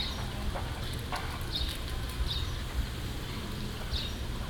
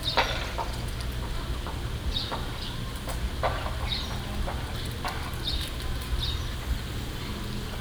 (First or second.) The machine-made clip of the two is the first